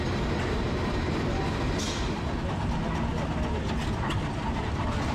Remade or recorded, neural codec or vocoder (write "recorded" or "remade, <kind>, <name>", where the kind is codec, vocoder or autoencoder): recorded